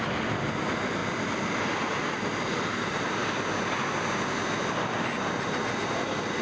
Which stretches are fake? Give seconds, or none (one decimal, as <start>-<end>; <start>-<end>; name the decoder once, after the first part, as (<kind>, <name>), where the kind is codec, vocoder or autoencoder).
none